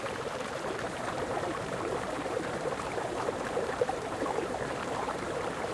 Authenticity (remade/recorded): remade